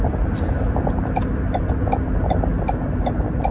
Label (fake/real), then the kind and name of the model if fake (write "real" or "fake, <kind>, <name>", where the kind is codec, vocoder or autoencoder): real